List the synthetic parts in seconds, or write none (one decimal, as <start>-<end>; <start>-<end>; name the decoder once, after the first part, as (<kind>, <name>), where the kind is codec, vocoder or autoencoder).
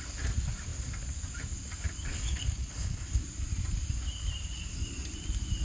2.1-3.2 (codec, HILCodec)